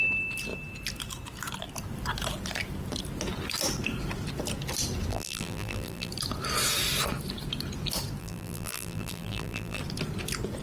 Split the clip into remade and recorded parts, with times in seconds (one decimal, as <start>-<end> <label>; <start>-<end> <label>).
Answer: 0.0-5.1 recorded; 5.1-6.1 remade; 6.1-8.2 recorded; 8.2-9.8 remade; 9.8-10.6 recorded

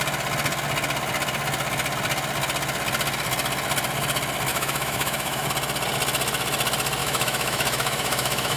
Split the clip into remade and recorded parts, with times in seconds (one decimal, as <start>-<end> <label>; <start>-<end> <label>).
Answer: 0.0-4.5 recorded; 4.5-5.5 remade; 5.5-7.0 recorded; 7.0-8.6 remade